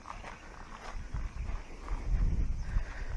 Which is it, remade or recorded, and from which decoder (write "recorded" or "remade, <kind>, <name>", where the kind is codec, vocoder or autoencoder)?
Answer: recorded